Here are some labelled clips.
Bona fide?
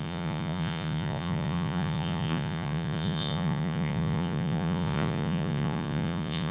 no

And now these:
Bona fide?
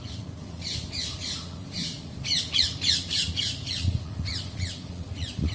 no